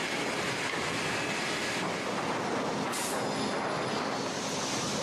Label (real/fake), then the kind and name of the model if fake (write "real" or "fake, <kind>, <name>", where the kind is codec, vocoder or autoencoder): real